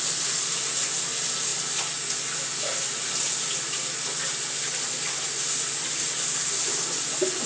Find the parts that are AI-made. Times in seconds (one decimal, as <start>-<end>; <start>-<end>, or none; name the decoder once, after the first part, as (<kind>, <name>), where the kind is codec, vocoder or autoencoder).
none